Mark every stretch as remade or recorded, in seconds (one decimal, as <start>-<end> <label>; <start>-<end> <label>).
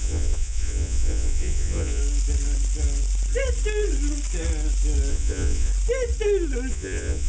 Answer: 0.0-2.0 remade; 2.0-5.1 recorded; 5.1-5.7 remade; 5.7-6.7 recorded; 6.7-7.3 remade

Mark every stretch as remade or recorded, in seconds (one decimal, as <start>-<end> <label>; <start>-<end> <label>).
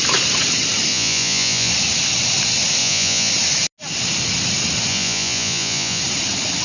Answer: 0.0-0.9 recorded; 0.9-1.7 remade; 1.7-2.8 recorded; 2.8-3.3 remade; 3.3-4.9 recorded; 4.9-6.0 remade; 6.0-6.6 recorded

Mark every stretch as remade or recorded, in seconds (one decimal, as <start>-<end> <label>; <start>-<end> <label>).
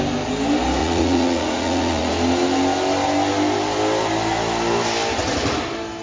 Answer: 0.0-0.8 recorded; 0.8-2.1 remade; 2.1-6.0 recorded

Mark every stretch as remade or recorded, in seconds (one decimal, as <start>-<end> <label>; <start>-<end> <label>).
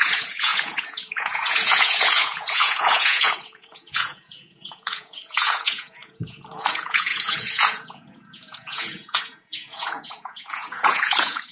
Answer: 0.0-11.5 remade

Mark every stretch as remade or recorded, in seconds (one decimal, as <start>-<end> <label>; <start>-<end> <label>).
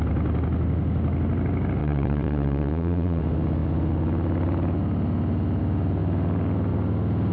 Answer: 0.0-1.8 recorded; 1.8-3.2 remade; 3.2-7.3 recorded